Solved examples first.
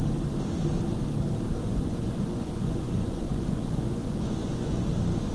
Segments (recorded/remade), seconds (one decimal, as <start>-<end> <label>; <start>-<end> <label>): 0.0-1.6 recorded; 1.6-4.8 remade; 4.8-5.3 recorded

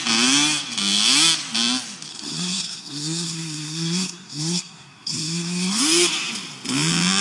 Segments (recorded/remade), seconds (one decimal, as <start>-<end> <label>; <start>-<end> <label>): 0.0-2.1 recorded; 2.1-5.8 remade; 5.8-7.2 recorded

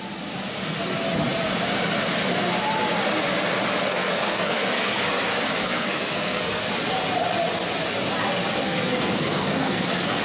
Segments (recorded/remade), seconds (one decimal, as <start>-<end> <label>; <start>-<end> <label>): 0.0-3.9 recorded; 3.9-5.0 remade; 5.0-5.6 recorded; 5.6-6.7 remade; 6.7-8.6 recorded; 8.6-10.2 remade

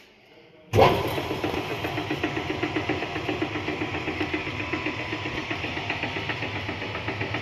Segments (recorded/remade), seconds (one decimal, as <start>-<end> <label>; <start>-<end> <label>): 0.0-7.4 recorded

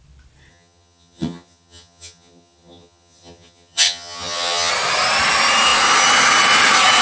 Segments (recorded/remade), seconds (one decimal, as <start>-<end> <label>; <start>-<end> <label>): 0.0-0.5 recorded; 0.5-4.7 remade; 4.7-7.0 recorded